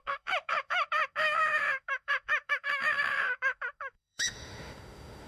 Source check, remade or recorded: remade